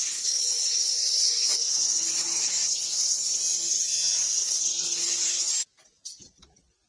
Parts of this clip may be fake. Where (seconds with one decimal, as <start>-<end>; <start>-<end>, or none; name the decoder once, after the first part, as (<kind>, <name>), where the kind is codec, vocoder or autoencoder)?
0.0-3.4 (codec, HILCodec); 4.4-5.5